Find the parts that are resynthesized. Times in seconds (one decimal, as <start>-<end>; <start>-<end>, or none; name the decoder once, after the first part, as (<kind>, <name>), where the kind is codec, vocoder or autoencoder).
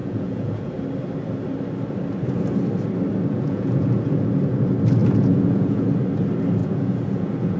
0.0-0.7 (vocoder, Vocos); 3.3-4.4; 5.0-5.9; 6.6-7.6